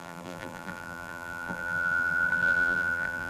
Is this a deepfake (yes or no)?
yes